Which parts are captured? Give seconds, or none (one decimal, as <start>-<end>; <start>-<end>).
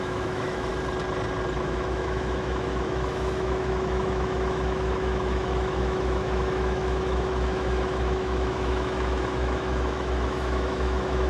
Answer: 0.7-1.6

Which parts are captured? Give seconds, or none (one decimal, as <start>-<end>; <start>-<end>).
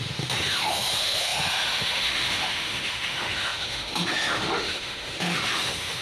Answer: none